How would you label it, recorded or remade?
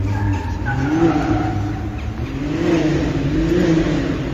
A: recorded